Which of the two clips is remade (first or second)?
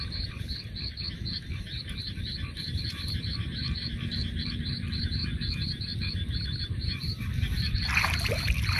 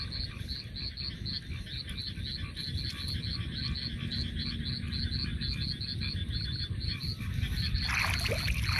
first